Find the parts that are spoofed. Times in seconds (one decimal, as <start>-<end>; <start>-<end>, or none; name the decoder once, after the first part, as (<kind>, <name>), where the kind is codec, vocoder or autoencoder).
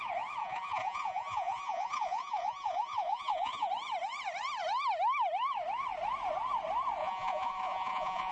0.4-3.7 (vocoder, Vocos); 7.0-8.3